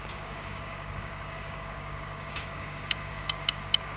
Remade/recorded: remade